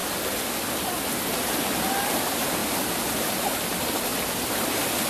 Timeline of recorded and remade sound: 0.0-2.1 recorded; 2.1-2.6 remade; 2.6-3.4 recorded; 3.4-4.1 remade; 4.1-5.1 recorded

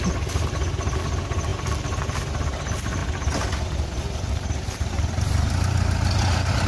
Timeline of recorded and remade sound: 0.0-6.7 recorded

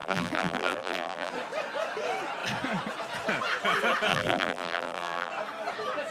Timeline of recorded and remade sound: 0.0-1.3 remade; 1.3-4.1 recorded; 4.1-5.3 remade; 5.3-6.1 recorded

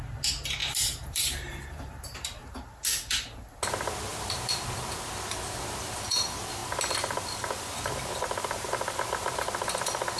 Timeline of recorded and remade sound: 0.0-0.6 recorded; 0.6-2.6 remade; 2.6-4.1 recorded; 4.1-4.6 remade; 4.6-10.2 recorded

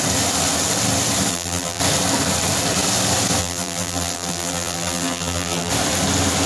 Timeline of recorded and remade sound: 0.0-1.3 recorded; 1.3-1.8 remade; 1.8-3.4 recorded; 3.4-5.7 remade; 5.7-6.5 recorded

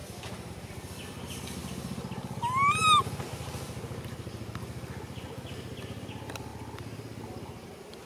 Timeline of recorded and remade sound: 0.0-1.6 remade; 1.6-5.8 recorded; 5.8-8.1 remade

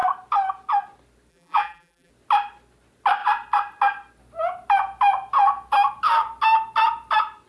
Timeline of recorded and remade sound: 0.0-1.3 recorded; 1.3-2.1 remade; 2.1-7.5 recorded